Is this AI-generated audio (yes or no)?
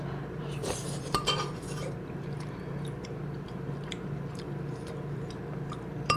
yes